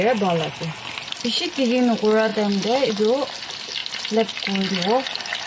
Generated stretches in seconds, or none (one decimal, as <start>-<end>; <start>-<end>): none